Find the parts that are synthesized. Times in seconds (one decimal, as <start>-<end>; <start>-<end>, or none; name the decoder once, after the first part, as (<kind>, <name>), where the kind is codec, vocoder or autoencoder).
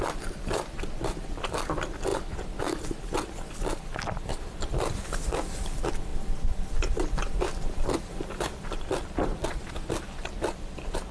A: 0.0-2.1 (vocoder, BigVGAN v2); 4.7-9.3; 9.9-11.1